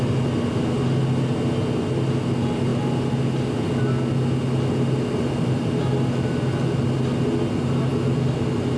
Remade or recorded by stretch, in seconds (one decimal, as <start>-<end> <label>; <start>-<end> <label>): 0.0-8.8 recorded